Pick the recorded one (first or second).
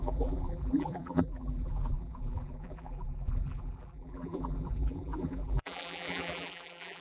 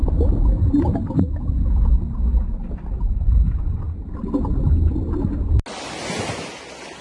second